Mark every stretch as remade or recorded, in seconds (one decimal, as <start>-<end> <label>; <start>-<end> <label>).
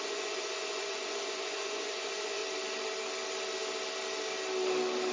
0.0-2.4 remade; 2.4-5.1 recorded